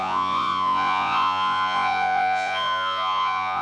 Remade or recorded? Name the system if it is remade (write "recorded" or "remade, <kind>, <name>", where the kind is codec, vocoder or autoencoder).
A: remade, vocoder, Vocos